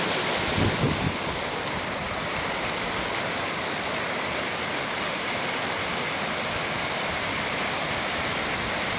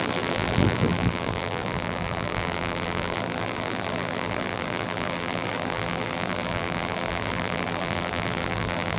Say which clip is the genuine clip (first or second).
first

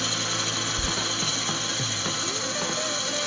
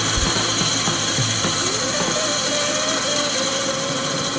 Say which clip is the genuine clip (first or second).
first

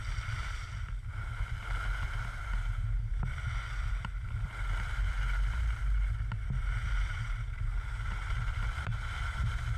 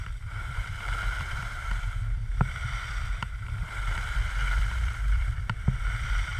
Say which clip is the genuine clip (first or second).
first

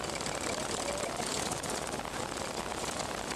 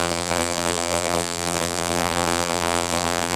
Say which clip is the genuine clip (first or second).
first